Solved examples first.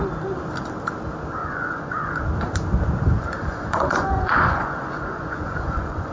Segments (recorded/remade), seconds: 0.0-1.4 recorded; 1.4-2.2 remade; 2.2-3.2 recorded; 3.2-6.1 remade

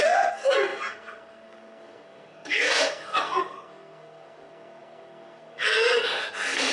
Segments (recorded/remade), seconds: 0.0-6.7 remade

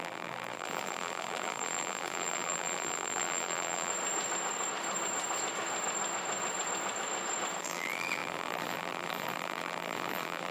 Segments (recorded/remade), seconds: 0.0-3.9 remade; 3.9-7.6 recorded; 7.6-10.5 remade